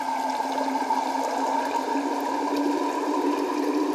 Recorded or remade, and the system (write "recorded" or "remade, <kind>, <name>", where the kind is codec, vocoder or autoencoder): recorded